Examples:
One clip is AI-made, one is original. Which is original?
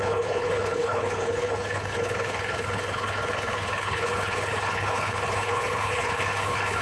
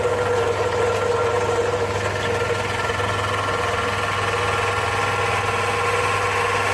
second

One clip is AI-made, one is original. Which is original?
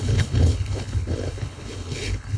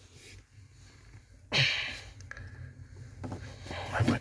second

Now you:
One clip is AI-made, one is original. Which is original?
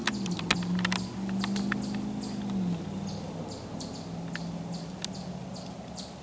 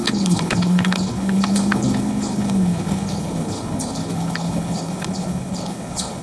first